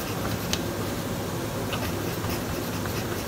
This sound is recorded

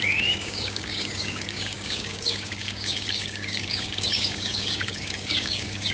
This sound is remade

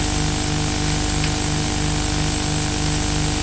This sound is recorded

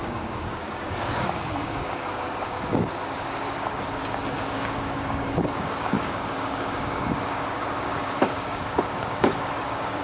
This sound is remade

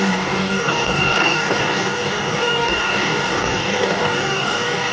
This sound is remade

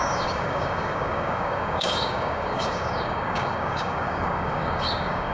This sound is remade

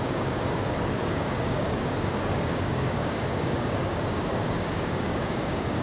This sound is remade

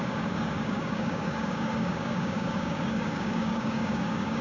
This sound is remade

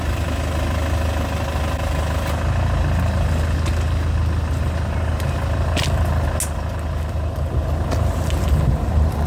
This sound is recorded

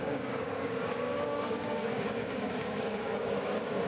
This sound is remade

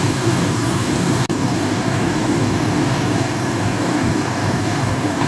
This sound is remade